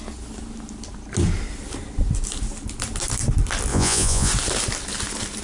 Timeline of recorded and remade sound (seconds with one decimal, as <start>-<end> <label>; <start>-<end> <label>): 0.0-3.7 recorded; 3.7-4.3 remade; 4.3-5.4 recorded